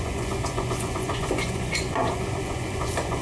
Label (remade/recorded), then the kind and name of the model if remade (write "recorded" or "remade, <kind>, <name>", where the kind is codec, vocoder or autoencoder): remade, vocoder, Vocos